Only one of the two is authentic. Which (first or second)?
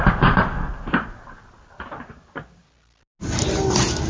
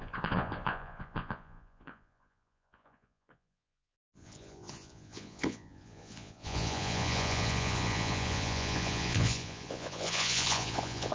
first